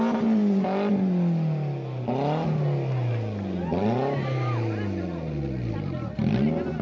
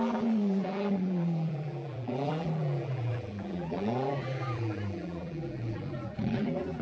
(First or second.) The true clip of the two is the first